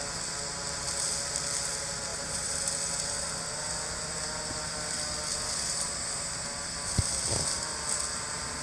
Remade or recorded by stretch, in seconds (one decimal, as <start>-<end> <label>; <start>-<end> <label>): 0.0-2.1 recorded; 2.1-2.7 remade; 2.7-8.6 recorded